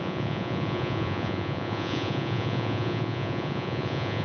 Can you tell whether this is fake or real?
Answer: fake